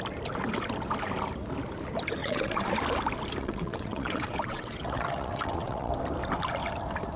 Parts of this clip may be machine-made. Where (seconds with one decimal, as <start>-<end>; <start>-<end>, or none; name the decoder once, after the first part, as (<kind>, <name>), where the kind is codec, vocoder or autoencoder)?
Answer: 2.2-2.7 (vocoder, WaveNeXt); 3.4-5.9

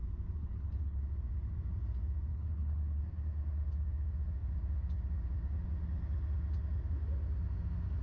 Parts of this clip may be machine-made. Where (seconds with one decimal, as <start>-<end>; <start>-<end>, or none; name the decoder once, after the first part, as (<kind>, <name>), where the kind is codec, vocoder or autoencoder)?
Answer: 0.4-1.0 (codec, HILCodec); 2.3-3.0

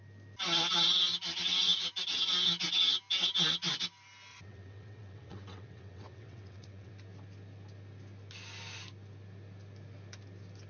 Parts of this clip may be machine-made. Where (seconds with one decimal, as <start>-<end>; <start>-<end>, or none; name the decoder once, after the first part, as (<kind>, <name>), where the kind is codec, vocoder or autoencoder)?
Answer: 4.3-6.9 (vocoder, WaveNeXt)

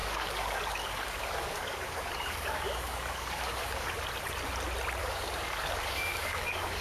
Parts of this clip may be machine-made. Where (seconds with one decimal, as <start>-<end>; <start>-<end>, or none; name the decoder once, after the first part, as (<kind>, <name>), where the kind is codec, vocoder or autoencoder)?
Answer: 0.0-4.0 (codec, DAC); 5.0-6.8

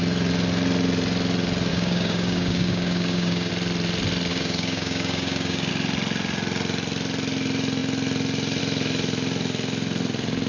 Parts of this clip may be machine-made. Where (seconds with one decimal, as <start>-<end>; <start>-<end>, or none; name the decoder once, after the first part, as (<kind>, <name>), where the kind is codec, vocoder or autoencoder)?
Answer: 1.7-3.5 (codec, DAC); 4.3-5.7

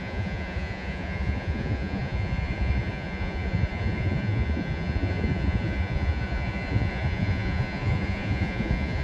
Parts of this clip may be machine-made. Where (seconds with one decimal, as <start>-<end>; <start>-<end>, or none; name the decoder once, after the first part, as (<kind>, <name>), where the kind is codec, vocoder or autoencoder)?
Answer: 0.0-9.0 (vocoder, Vocos)

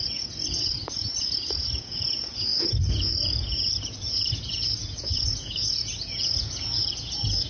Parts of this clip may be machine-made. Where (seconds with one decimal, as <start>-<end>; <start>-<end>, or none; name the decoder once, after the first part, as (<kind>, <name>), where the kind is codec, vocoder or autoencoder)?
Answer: 0.0-7.5 (vocoder, Vocos)

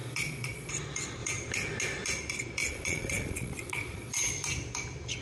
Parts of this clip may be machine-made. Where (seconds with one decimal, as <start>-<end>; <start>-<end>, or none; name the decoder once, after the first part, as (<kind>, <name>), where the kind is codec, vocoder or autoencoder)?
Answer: 0.0-0.7 (vocoder, Vocos); 2.6-4.3